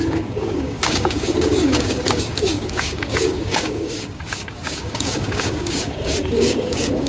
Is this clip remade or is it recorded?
remade